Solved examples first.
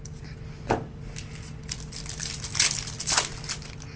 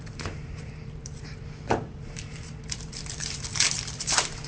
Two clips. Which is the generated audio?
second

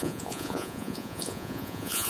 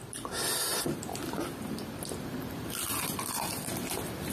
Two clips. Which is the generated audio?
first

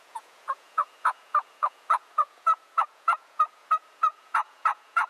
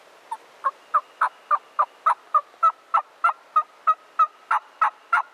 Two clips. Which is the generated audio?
first